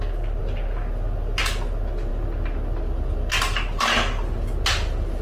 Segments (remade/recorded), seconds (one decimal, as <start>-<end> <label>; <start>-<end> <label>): 0.0-5.2 recorded